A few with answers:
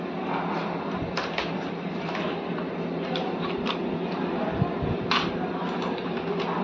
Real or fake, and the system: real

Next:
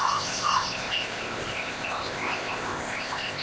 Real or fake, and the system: fake, codec, ZipCodec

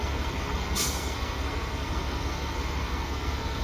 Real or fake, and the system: fake, codec, SNAC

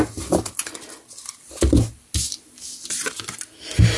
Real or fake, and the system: real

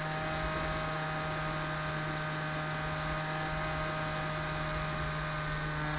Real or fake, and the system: real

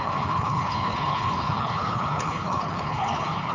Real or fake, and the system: fake, codec, HILCodec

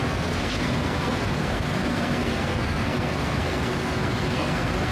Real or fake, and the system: fake, codec, SNAC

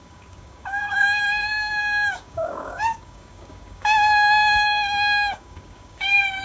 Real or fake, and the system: fake, codec, DAC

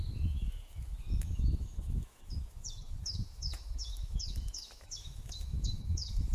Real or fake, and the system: fake, autoencoder, DAC-VAE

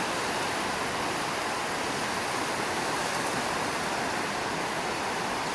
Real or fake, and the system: real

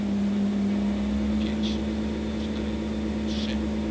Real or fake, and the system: real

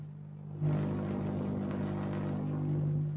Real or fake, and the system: real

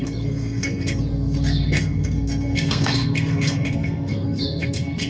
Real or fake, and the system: fake, codec, SNAC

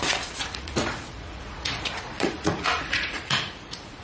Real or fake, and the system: fake, vocoder, Vocos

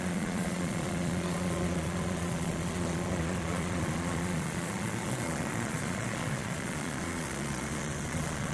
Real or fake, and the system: fake, vocoder, Vocos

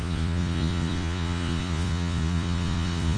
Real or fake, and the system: fake, vocoder, Vocos